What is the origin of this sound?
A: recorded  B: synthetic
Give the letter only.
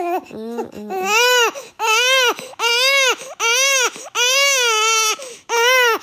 B